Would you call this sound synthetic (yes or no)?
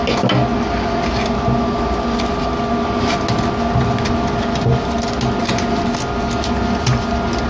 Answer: no